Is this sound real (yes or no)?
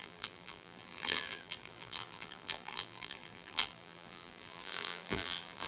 no